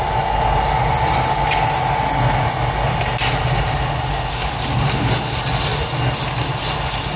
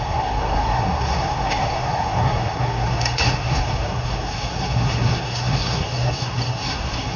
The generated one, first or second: second